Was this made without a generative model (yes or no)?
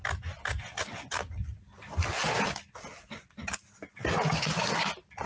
yes